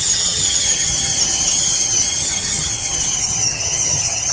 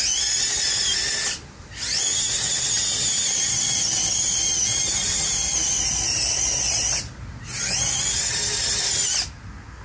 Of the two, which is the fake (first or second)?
first